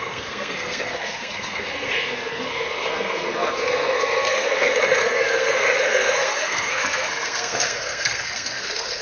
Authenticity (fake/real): fake